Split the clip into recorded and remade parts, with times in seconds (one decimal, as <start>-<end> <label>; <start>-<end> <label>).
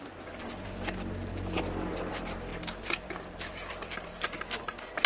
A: 0.0-2.5 recorded; 2.5-3.5 remade; 3.5-5.1 recorded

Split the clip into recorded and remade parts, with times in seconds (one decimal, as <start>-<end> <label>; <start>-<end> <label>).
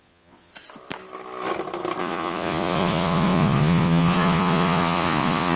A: 0.0-0.5 remade; 0.5-2.0 recorded; 2.0-5.6 remade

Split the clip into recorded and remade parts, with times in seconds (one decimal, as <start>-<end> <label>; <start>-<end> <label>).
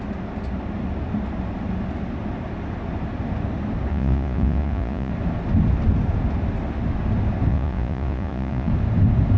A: 0.0-3.9 recorded; 3.9-5.1 remade; 5.1-7.5 recorded; 7.5-8.7 remade; 8.7-9.4 recorded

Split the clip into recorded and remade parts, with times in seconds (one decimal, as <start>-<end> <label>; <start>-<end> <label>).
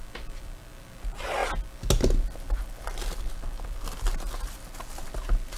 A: 0.0-5.6 recorded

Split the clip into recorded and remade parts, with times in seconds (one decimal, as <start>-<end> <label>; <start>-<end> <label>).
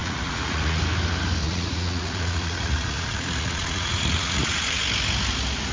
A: 0.0-0.8 remade; 0.8-1.4 recorded; 1.4-4.8 remade; 4.8-5.7 recorded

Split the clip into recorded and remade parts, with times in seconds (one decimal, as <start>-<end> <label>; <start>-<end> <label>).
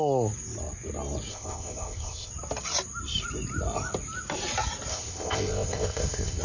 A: 0.0-1.3 recorded; 1.3-2.3 remade; 2.3-4.9 recorded; 4.9-6.4 remade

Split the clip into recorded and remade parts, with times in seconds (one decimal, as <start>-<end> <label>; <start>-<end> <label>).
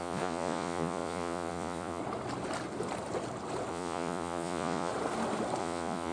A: 0.0-2.0 remade; 2.0-3.7 recorded; 3.7-4.9 remade; 4.9-5.6 recorded; 5.6-6.1 remade